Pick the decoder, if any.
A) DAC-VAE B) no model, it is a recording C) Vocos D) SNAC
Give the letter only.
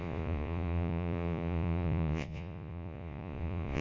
C